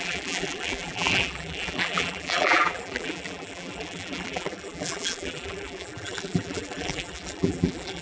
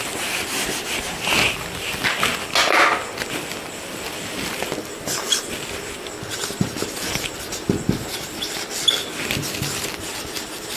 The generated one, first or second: first